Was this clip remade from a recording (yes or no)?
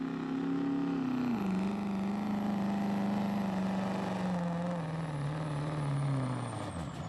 no